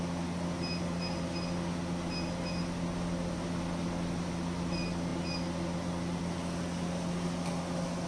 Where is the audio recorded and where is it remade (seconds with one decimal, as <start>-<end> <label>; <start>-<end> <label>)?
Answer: 0.0-8.1 recorded